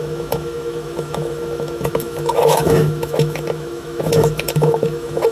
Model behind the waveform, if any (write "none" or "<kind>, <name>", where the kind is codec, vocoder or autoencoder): autoencoder, DAC-VAE